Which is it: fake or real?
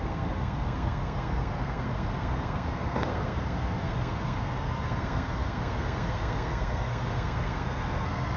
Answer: fake